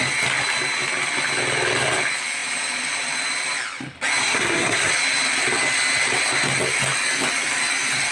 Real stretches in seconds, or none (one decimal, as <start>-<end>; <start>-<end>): 0.0-4.2; 4.9-8.1